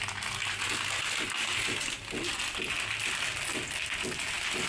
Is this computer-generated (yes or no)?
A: no